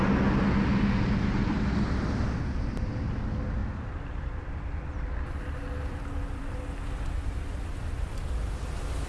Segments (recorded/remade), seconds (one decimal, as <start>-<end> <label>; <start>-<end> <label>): 0.0-3.6 recorded; 3.6-8.7 remade; 8.7-9.1 recorded